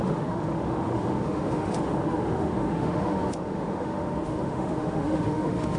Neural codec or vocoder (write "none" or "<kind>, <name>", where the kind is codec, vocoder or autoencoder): autoencoder, DAC-VAE